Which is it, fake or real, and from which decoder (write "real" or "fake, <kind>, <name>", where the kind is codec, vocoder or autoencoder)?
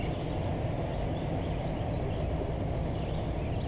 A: real